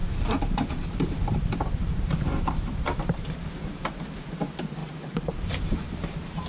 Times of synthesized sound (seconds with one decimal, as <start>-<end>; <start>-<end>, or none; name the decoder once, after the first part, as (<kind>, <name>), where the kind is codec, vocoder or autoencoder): 0.0-3.9 (vocoder, BigVGAN v2); 4.8-6.5